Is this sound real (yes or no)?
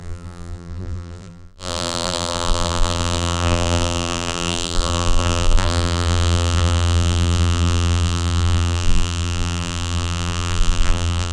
no